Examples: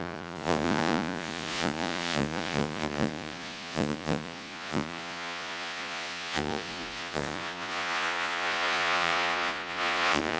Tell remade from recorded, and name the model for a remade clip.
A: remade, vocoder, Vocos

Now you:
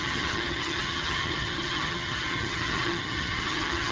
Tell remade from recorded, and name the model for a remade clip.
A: remade, vocoder, HiFi-GAN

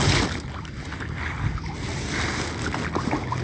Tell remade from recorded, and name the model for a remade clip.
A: recorded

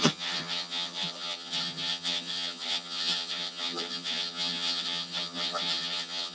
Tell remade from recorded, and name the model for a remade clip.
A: remade, vocoder, HiFi-GAN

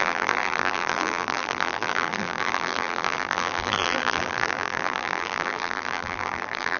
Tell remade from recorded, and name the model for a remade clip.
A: remade, vocoder, BigVGAN v2